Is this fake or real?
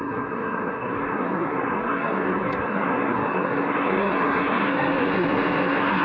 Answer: fake